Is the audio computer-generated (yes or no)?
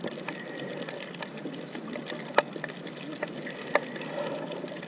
no